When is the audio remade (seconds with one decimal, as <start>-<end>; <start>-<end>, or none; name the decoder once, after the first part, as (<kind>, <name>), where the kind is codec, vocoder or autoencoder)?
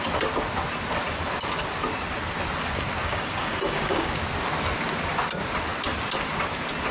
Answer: 3.0-4.1 (codec, DAC)